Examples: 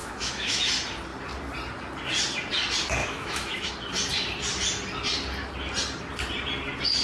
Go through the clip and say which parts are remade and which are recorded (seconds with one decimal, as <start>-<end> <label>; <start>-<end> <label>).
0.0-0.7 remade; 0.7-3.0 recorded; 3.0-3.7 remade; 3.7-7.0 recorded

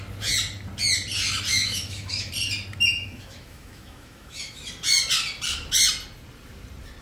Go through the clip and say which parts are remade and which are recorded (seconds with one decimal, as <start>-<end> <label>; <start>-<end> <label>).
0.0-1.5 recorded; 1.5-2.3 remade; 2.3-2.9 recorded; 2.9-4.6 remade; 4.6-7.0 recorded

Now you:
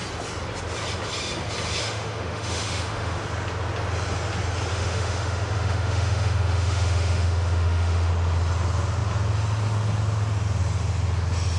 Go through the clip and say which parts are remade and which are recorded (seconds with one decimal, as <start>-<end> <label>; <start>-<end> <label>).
0.0-1.8 recorded; 1.8-3.2 remade; 3.2-4.7 recorded; 4.7-8.1 remade; 8.1-11.6 recorded

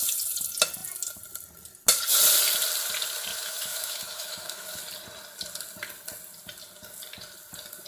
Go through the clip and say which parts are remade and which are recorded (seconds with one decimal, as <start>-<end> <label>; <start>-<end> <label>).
0.0-3.3 recorded; 3.3-4.8 remade; 4.8-7.9 recorded